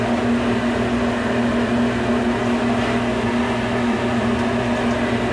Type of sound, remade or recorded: recorded